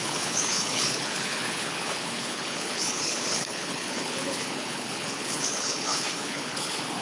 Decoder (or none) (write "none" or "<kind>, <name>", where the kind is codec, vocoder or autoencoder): codec, HILCodec